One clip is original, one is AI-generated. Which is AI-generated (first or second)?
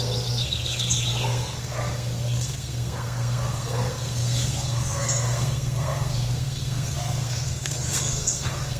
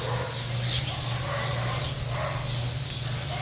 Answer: first